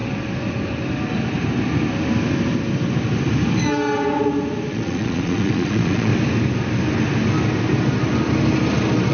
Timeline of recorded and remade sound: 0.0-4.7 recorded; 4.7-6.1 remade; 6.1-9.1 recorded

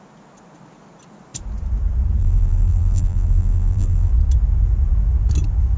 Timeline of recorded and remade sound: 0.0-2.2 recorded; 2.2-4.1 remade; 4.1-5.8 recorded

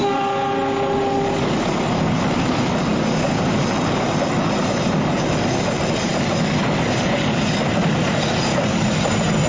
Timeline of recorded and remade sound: 0.0-9.5 recorded